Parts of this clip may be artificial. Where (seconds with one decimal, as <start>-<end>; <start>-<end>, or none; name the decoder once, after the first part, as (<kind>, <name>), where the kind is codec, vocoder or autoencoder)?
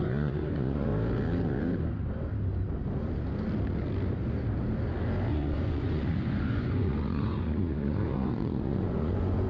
0.0-0.9 (vocoder, Vocos); 5.3-9.5